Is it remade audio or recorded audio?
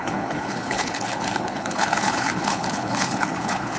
remade